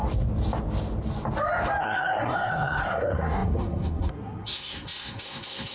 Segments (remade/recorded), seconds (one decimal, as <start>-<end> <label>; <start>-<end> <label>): 0.0-1.8 recorded; 1.8-5.7 remade